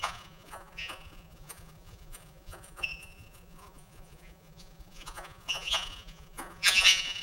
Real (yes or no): no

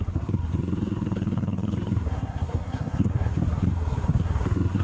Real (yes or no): no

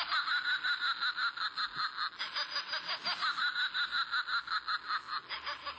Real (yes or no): yes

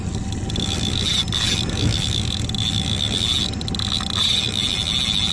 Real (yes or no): yes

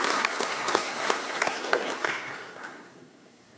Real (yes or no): no